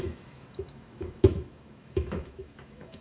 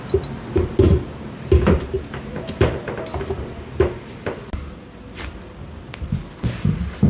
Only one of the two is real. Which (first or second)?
second